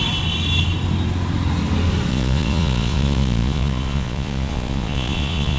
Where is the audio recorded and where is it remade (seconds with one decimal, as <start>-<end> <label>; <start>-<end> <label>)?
0.0-2.1 recorded; 2.1-5.6 remade